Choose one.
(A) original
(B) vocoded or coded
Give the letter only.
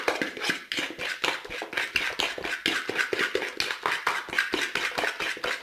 A